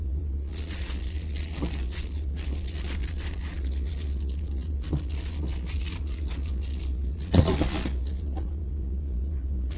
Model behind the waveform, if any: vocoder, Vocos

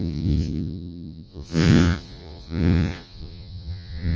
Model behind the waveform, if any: vocoder, Vocos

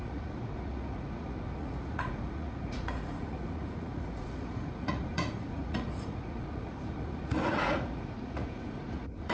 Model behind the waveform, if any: vocoder, Vocos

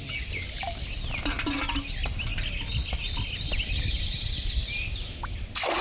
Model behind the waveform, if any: none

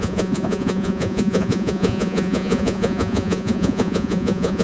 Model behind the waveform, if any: vocoder, Vocos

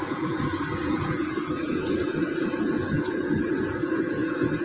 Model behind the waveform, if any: vocoder, Vocos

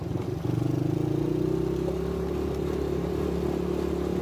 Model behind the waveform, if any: none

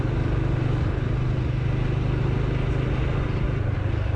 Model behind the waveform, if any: none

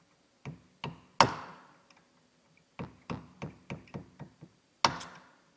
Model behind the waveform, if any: none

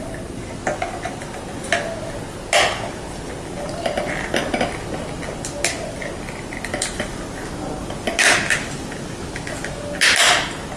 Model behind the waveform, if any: none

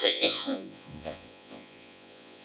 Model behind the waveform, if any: vocoder, Vocos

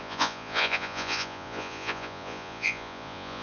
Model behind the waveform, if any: vocoder, Vocos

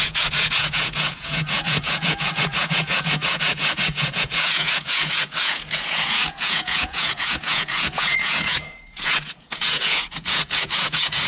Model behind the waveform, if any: vocoder, Vocos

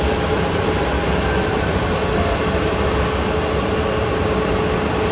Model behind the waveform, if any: none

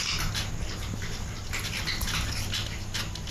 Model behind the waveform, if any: none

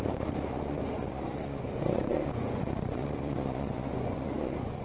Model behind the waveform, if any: vocoder, Vocos